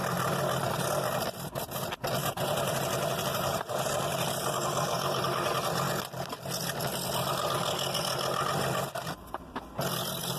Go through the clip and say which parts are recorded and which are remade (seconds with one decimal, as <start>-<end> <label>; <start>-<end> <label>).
0.0-2.2 recorded; 2.2-5.8 remade; 5.8-10.4 recorded